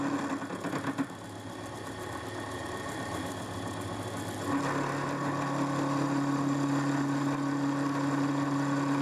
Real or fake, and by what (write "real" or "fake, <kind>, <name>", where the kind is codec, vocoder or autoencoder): real